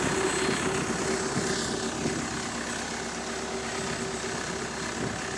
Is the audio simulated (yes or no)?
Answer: no